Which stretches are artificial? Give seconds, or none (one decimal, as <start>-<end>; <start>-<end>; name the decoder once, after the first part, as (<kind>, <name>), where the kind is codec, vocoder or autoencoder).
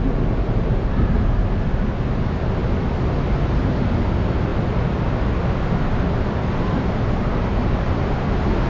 none